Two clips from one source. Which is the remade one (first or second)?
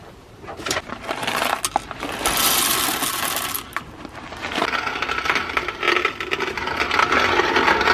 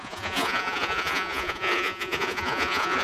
second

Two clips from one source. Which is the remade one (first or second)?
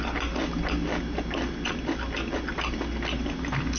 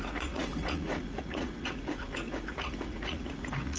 second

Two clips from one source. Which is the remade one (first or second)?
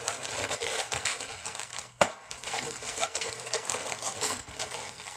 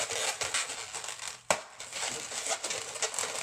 first